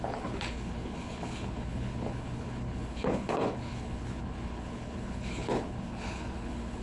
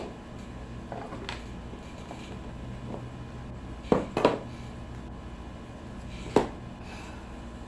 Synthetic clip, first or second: first